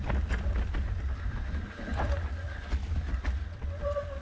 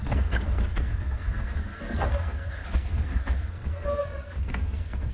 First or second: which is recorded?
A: first